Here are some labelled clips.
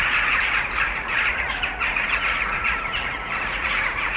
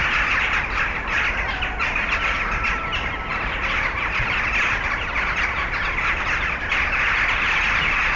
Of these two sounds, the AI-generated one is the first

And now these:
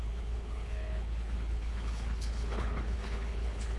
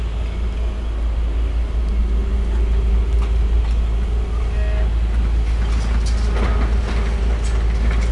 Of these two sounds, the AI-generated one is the first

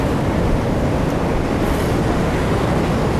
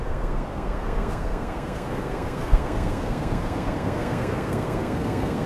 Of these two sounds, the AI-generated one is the second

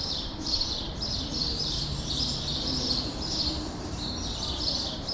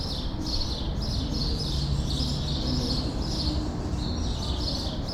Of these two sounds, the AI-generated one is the first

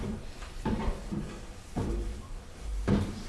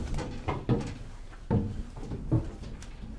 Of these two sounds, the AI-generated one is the first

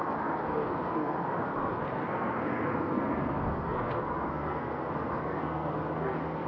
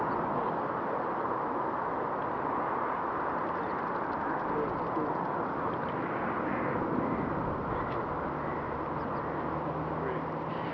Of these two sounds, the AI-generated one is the first